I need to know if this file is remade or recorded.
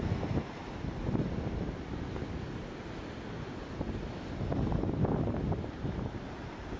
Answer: recorded